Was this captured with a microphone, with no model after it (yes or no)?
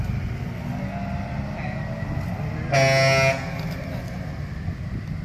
yes